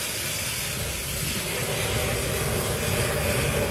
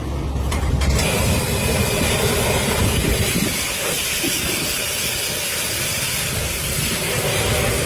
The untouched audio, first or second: first